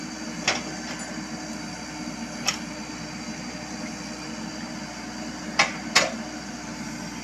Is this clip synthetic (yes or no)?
no